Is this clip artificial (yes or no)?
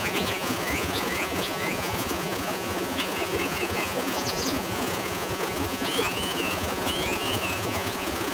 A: yes